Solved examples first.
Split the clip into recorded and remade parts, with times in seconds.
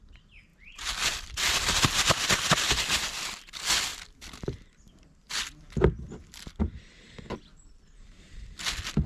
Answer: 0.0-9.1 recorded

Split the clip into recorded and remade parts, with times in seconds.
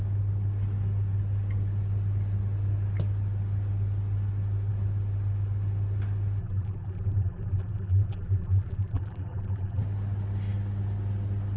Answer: 0.0-6.4 recorded; 6.4-9.8 remade; 9.8-11.6 recorded